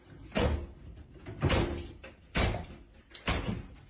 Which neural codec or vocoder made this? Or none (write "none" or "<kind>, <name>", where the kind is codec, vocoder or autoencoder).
none